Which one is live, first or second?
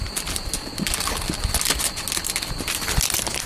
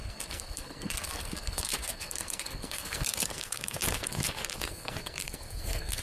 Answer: first